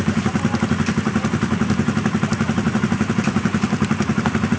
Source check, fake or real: real